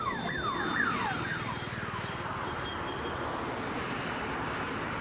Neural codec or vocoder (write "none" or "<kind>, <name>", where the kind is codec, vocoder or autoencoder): none